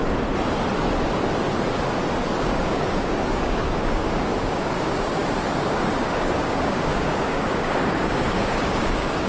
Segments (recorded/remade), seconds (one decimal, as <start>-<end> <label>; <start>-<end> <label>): 0.0-2.4 recorded; 2.4-4.3 remade; 4.3-4.8 recorded; 4.8-5.2 remade; 5.2-6.0 recorded; 6.0-9.3 remade